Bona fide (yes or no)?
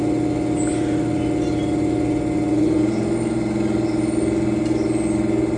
yes